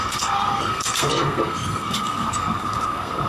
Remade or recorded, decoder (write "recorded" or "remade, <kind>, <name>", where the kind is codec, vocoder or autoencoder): remade, codec, SNAC